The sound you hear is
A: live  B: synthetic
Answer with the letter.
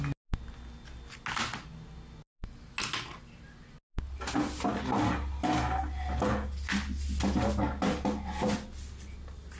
A